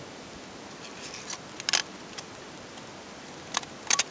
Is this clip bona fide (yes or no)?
yes